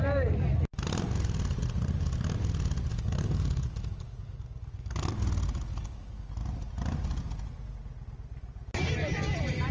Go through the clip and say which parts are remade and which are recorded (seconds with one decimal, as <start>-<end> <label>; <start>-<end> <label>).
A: 0.0-2.9 recorded; 2.9-5.1 remade; 5.1-5.7 recorded; 5.7-6.3 remade; 6.3-9.7 recorded